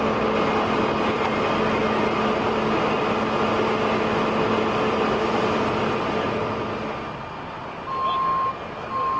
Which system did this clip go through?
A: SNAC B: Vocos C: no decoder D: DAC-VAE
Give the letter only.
C